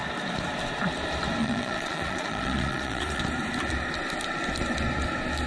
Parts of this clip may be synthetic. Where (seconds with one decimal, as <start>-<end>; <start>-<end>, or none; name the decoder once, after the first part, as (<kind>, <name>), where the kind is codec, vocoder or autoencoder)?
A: 1.4-3.2 (vocoder, Vocos)